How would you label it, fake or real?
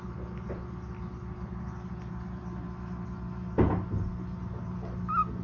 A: real